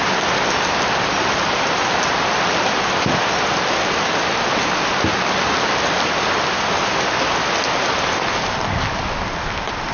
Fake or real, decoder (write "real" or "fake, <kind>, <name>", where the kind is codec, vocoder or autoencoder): real